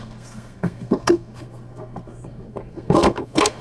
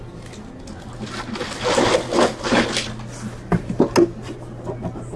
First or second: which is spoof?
first